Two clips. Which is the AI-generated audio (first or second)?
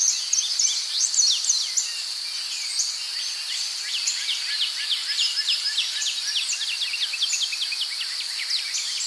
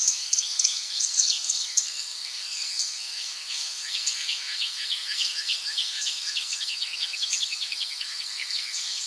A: second